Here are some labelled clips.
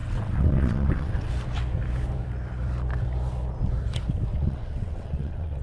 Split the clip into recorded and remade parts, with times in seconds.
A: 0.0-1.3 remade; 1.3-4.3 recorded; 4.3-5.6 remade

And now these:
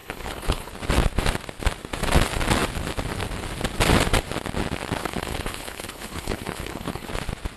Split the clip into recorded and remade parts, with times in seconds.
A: 0.0-0.7 remade; 0.7-5.0 recorded; 5.0-7.1 remade; 7.1-7.6 recorded